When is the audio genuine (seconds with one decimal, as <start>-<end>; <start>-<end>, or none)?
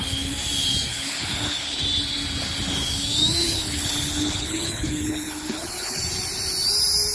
0.0-0.9; 1.8-3.4; 6.0-7.1